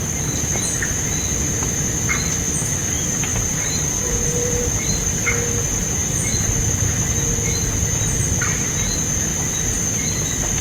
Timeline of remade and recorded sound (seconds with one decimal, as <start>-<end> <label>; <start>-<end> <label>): 0.0-3.3 recorded; 3.3-4.7 remade; 4.7-10.6 recorded